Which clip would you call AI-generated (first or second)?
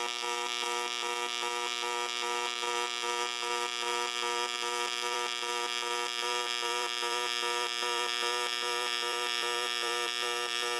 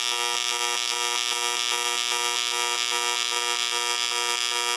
first